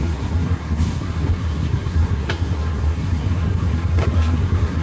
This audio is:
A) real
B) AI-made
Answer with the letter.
B